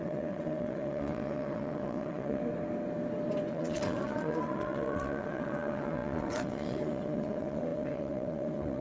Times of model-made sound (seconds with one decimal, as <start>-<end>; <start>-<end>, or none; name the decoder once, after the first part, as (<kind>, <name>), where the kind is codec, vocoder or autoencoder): 0.0-2.4 (vocoder, WaveNeXt); 3.5-8.8